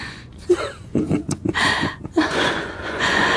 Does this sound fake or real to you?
fake